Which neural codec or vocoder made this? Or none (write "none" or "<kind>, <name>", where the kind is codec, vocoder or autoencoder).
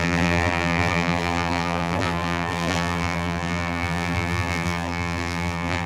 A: vocoder, BigVGAN v2